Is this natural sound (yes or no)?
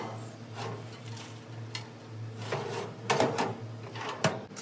yes